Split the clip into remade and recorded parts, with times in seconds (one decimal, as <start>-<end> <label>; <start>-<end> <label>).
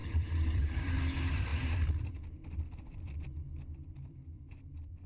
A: 0.0-5.1 remade